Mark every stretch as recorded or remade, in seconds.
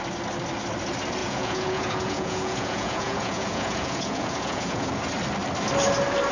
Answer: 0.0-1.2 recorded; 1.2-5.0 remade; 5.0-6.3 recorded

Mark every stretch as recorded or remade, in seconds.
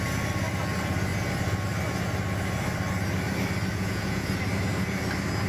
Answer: 0.0-3.7 recorded; 3.7-4.3 remade; 4.3-5.5 recorded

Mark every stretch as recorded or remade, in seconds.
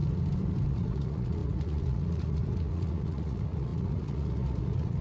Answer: 0.0-0.7 recorded; 0.7-5.0 remade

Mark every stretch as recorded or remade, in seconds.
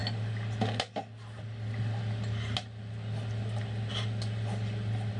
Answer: 0.0-5.2 recorded